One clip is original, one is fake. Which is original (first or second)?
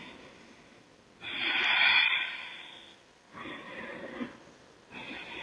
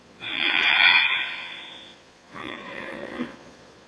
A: first